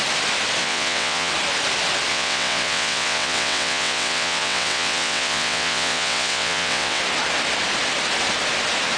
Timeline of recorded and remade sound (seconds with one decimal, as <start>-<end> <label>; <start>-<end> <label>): 0.0-0.6 recorded; 0.6-1.3 remade; 1.3-2.1 recorded; 2.1-7.0 remade; 7.0-9.0 recorded